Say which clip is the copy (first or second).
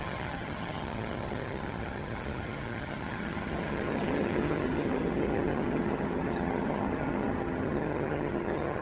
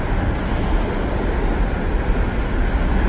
first